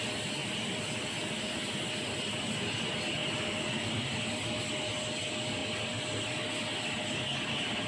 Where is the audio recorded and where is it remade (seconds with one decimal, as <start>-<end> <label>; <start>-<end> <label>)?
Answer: 0.0-0.4 recorded; 0.4-1.6 remade; 1.6-3.2 recorded; 3.2-3.9 remade; 3.9-7.9 recorded